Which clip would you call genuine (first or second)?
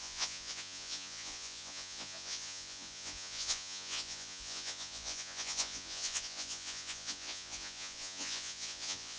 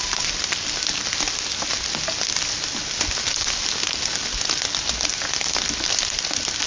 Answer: second